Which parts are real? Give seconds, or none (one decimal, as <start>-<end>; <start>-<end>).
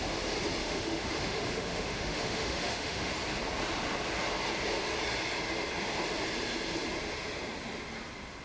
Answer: 0.0-0.6; 3.1-8.4